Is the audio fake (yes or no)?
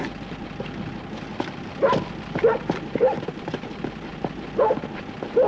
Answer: no